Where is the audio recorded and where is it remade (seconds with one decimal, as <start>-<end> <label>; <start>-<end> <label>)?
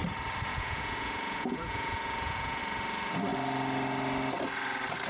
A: 0.0-0.5 recorded; 0.5-2.6 remade; 2.6-5.1 recorded